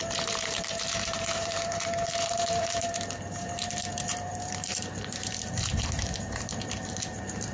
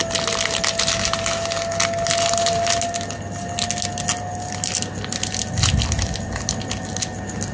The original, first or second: second